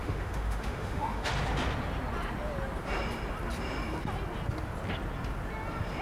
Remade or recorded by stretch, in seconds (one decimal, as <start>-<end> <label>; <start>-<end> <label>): 0.0-1.3 remade; 1.3-6.0 recorded